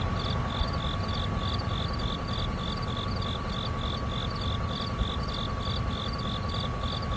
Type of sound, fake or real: real